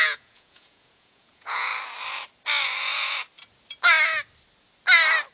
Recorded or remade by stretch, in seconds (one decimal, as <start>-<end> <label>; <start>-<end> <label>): 0.0-1.7 remade; 1.7-5.3 recorded